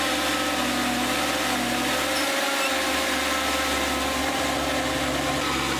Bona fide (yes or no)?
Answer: yes